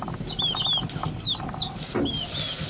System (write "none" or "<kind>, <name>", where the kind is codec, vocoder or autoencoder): none